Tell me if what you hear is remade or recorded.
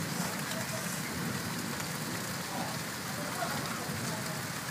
recorded